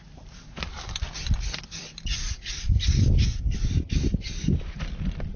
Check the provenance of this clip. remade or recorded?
recorded